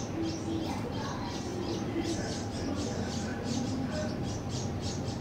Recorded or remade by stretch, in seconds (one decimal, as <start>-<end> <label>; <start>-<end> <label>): 0.0-5.2 recorded